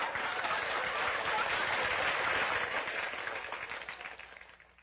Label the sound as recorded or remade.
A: recorded